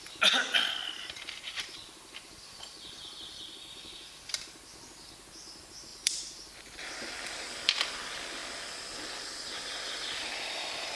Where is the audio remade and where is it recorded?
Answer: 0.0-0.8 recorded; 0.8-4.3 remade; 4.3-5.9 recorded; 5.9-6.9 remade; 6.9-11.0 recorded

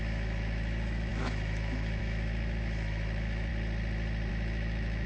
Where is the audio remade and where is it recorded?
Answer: 0.0-3.5 remade; 3.5-4.3 recorded; 4.3-5.1 remade

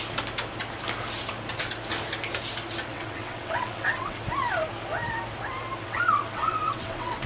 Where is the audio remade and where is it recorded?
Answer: 0.0-2.9 recorded; 2.9-4.2 remade; 4.2-5.8 recorded; 5.8-7.3 remade

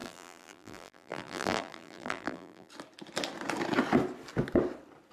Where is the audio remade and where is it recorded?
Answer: 0.0-2.7 remade; 2.7-5.1 recorded